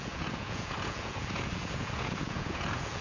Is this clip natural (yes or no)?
no